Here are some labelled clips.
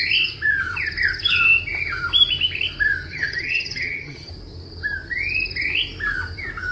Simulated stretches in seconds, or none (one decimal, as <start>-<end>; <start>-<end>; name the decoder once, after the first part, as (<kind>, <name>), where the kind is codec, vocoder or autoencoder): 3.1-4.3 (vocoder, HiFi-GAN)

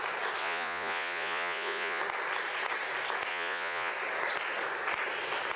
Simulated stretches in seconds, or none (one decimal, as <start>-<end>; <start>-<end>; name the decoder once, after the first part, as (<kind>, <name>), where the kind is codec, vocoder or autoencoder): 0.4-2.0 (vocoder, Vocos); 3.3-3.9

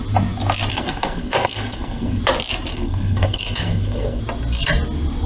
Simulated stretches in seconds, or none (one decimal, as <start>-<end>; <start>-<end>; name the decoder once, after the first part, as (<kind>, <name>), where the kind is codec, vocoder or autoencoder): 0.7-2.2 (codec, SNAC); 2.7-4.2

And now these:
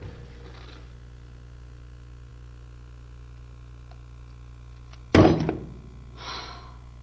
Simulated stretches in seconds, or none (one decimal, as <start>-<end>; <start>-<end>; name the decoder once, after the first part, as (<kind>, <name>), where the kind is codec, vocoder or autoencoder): none

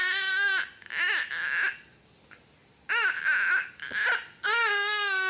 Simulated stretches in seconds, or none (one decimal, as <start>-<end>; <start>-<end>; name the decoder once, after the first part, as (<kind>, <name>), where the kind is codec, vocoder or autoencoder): none

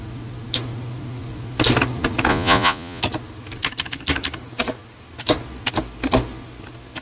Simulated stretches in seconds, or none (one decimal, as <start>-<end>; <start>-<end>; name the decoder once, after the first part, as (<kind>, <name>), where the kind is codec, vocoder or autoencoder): 2.3-3.0 (vocoder, Vocos)